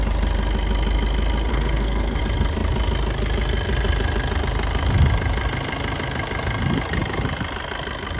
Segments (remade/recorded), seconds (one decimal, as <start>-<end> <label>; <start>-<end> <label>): 0.0-1.5 recorded; 1.5-2.2 remade; 2.2-8.2 recorded